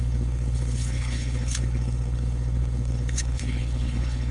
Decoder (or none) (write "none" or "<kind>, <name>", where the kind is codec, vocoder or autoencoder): codec, HILCodec